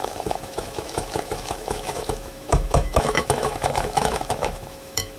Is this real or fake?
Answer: fake